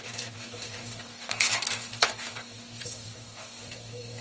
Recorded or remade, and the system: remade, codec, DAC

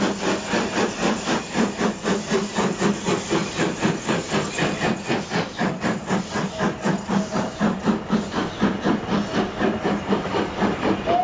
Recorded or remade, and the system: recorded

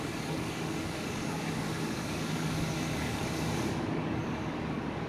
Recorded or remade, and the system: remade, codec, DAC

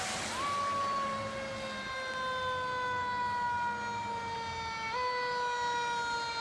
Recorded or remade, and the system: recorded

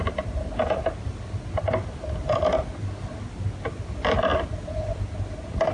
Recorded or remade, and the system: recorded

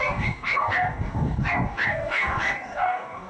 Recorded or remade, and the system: remade, codec, DAC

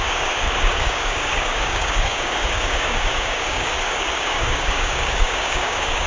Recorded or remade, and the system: remade, codec, DAC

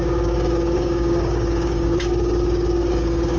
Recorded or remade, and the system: remade, codec, DAC